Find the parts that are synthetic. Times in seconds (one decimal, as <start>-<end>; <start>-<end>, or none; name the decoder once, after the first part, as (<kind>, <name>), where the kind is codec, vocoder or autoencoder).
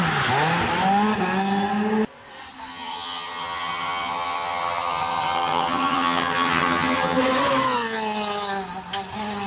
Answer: 2.7-7.2 (vocoder, HiFi-GAN)